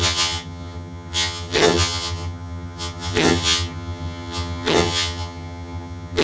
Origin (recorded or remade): remade